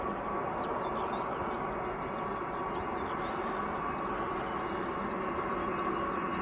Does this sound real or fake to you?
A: real